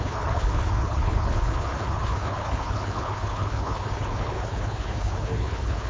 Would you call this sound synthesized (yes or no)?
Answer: yes